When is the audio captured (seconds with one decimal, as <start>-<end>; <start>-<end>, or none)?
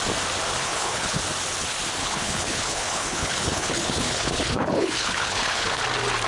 0.0-0.6; 1.2-2.0; 5.8-6.3